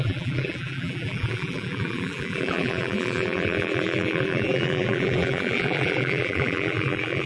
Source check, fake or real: fake